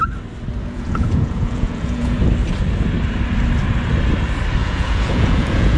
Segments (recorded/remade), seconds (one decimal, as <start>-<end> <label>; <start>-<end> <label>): 0.0-0.6 recorded; 0.6-2.2 remade; 2.2-4.6 recorded; 4.6-5.8 remade